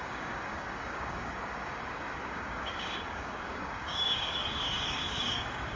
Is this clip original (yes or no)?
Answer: no